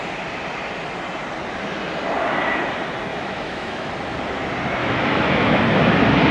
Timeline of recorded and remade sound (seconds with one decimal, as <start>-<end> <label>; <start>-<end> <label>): 0.0-3.1 recorded; 3.1-3.9 remade; 3.9-4.8 recorded; 4.8-5.6 remade; 5.6-6.3 recorded